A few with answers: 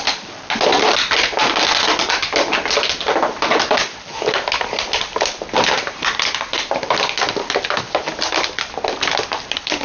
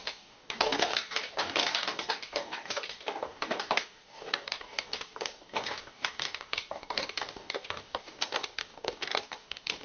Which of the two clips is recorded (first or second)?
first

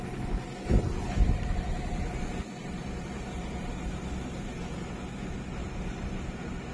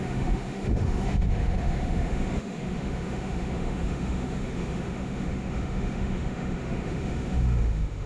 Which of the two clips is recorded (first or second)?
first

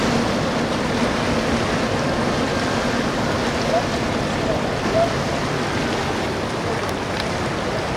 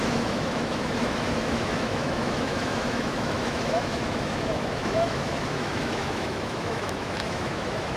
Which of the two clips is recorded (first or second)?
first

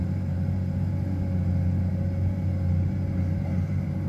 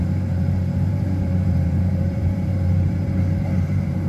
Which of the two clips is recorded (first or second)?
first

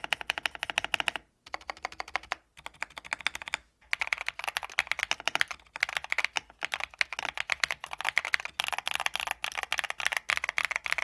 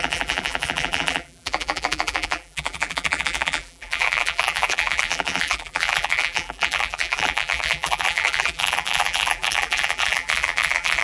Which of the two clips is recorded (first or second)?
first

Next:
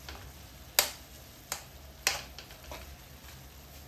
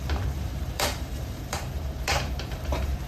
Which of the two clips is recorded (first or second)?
first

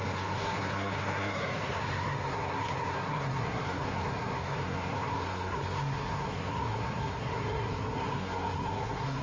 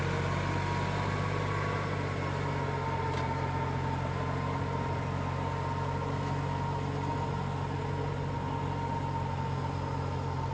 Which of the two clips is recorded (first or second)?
second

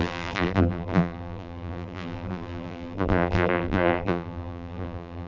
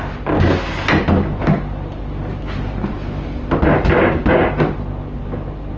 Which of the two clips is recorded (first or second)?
second